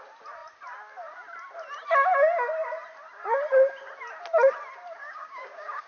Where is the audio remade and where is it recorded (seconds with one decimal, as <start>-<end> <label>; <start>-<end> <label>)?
0.0-5.0 recorded; 5.0-5.9 remade